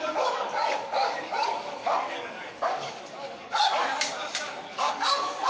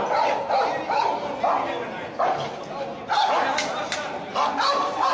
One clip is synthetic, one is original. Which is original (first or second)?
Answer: second